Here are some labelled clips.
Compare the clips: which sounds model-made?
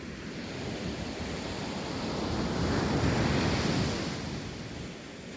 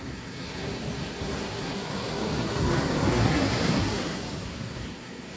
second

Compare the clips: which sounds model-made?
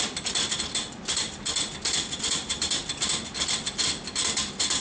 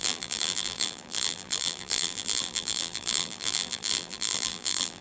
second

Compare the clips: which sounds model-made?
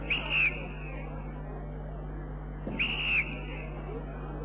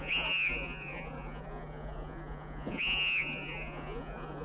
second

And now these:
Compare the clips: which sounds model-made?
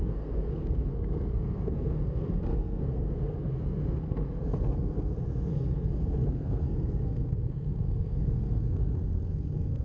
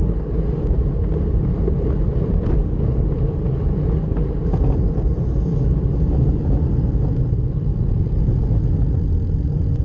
first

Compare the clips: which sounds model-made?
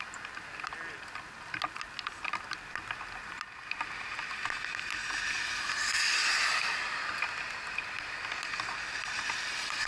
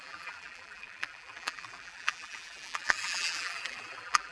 second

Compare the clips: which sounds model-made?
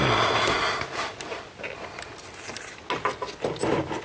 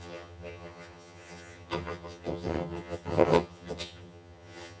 second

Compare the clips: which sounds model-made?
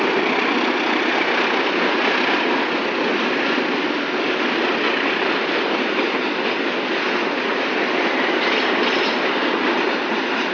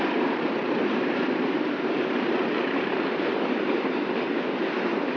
second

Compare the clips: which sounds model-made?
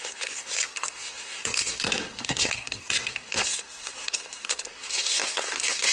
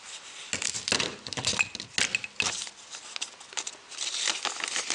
first